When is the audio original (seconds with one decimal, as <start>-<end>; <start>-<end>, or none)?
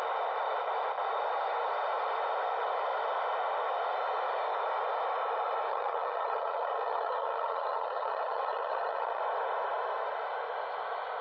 0.0-5.7; 9.2-11.2